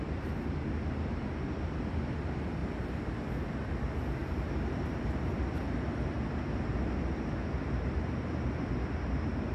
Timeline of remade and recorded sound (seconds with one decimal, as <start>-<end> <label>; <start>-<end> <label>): 0.0-2.6 recorded; 2.6-3.3 remade; 3.3-9.5 recorded